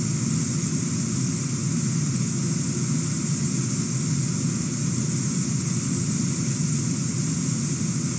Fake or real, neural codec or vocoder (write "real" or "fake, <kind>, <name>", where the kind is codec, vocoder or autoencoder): real